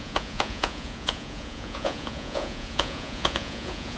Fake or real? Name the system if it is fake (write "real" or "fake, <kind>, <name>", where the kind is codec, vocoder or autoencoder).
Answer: fake, vocoder, Vocos